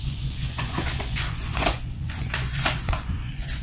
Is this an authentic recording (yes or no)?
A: no